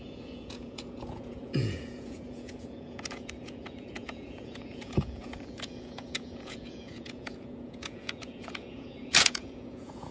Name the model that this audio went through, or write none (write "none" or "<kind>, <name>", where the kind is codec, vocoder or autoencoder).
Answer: vocoder, Vocos